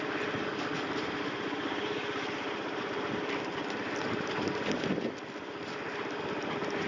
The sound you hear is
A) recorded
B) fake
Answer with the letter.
B